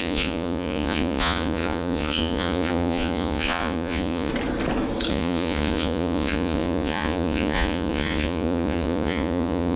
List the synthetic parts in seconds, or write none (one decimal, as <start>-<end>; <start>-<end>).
0.0-4.3; 5.1-9.8